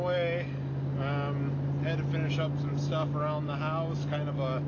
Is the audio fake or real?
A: real